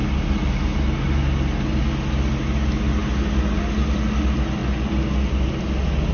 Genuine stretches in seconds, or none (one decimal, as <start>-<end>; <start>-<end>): 0.0-6.1